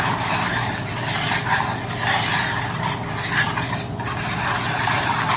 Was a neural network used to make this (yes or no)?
no